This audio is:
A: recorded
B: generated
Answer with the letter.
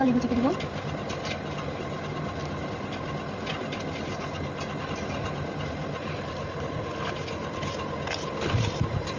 A